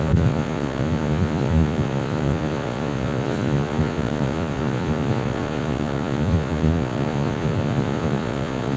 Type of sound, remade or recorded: remade